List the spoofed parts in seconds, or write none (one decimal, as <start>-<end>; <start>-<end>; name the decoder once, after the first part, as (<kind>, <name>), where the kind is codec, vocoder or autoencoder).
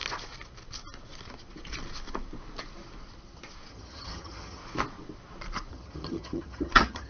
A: 3.7-4.6 (vocoder, HiFi-GAN); 5.7-7.1